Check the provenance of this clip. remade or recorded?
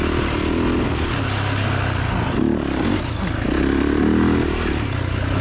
recorded